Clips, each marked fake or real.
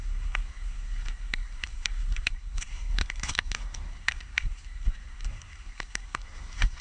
fake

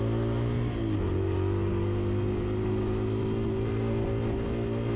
real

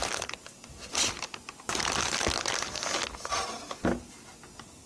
real